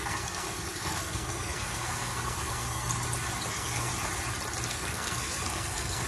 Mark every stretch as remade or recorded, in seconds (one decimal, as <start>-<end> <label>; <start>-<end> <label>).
0.0-2.9 remade; 2.9-3.5 recorded; 3.5-3.9 remade; 3.9-4.7 recorded; 4.7-6.1 remade